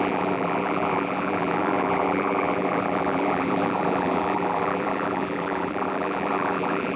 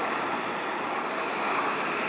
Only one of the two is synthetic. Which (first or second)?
first